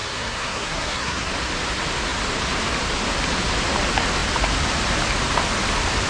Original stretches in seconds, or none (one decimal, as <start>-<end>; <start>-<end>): 1.3-6.1